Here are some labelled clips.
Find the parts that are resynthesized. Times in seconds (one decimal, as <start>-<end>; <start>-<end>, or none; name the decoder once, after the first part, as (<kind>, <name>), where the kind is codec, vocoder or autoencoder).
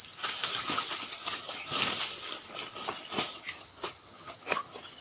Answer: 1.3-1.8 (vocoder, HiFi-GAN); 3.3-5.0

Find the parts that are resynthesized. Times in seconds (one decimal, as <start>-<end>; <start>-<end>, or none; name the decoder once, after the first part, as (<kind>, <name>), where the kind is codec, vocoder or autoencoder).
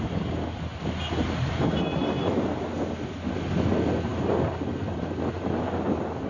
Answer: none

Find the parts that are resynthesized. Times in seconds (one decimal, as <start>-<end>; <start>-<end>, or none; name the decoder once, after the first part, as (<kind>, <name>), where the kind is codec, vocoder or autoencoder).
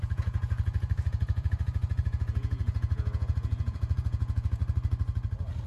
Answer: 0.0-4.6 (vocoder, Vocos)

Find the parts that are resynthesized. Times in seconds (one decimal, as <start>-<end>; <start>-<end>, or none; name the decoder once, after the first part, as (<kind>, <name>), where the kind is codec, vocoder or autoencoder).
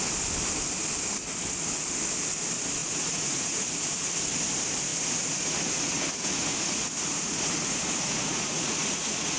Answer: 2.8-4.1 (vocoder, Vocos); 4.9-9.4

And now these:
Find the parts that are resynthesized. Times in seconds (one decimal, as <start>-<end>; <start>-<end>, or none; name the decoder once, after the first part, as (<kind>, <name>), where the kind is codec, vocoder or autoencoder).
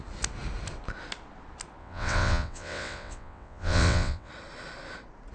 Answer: 1.8-4.3 (vocoder, WaveNeXt)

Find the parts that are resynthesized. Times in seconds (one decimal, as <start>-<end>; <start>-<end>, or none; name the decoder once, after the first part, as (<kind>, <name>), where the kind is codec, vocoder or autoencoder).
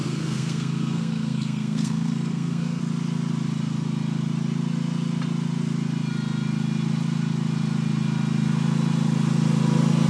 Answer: 0.0-2.8 (codec, SNAC)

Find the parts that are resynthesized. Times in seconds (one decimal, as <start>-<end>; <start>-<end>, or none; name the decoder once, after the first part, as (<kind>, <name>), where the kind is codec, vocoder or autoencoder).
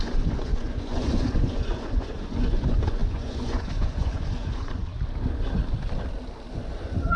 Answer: 0.0-4.8 (vocoder, Vocos); 6.5-7.2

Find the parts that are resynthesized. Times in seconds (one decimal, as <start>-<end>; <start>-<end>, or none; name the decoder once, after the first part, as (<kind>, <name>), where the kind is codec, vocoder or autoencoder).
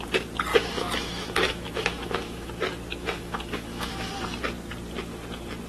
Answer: 0.5-2.5 (autoencoder, DAC-VAE); 3.0-4.1